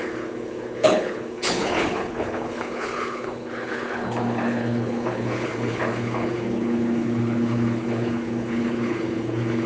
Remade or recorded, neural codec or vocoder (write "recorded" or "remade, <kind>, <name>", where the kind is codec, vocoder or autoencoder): remade, codec, HILCodec